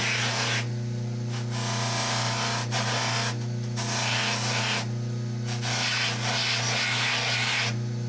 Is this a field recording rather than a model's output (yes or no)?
yes